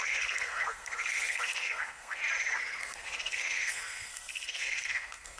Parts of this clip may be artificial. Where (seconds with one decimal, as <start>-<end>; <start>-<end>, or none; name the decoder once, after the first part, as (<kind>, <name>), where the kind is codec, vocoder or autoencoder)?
0.0-2.2 (codec, SNAC); 2.8-5.4